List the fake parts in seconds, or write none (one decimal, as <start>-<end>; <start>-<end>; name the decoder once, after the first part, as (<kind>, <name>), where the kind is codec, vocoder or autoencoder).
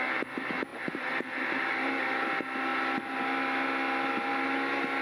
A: 0.7-1.9 (vocoder, BigVGAN v2)